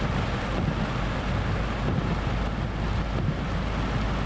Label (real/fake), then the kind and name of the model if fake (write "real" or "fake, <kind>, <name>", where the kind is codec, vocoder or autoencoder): real